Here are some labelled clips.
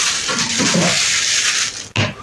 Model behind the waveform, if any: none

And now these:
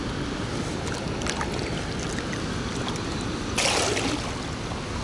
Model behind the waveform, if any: none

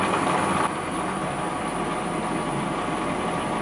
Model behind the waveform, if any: none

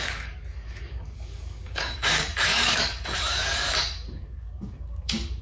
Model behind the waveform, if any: codec, DAC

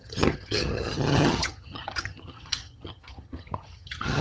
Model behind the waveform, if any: vocoder, HiFi-GAN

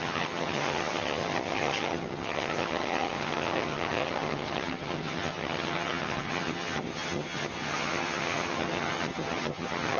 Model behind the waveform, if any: vocoder, HiFi-GAN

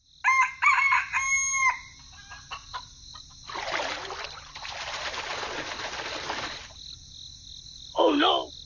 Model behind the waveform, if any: none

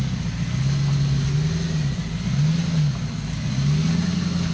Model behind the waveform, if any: none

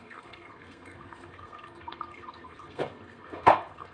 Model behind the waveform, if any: codec, SNAC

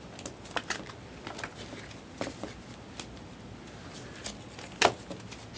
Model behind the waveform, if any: none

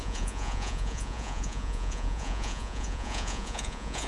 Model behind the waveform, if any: vocoder, Vocos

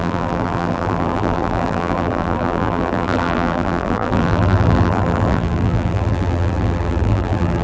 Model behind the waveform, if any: vocoder, BigVGAN v2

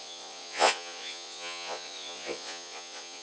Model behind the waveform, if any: vocoder, Vocos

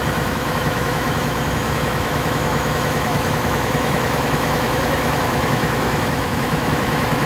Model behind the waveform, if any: autoencoder, DAC-VAE